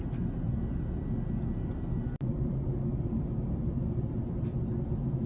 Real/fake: real